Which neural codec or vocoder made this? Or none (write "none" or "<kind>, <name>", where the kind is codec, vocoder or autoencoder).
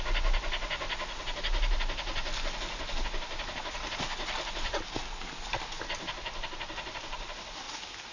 none